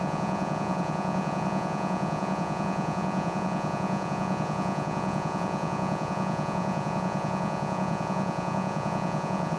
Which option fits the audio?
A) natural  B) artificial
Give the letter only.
B